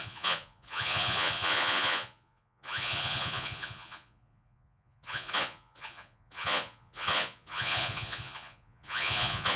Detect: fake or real fake